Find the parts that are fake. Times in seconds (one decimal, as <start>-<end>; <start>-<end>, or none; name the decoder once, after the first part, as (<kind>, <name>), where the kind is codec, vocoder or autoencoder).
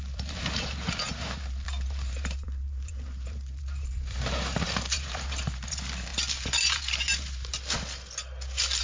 0.0-7.5 (vocoder, BigVGAN v2)